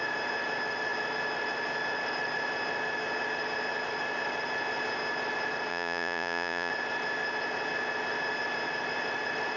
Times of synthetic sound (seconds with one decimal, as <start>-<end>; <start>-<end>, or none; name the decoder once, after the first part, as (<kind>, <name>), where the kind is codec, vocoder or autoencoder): 5.7-6.7 (vocoder, Vocos)